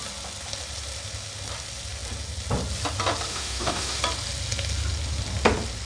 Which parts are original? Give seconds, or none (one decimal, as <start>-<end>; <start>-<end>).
0.0-3.3; 4.0-5.8